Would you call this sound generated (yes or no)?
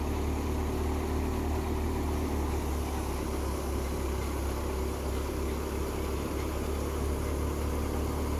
no